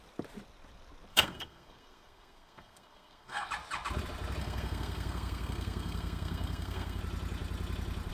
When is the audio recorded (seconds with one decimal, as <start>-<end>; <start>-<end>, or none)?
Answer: 0.0-1.1; 3.5-4.4; 7.0-8.1